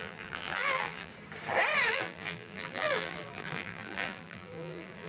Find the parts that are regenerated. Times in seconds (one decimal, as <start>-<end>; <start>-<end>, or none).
0.0-1.1; 1.9-5.1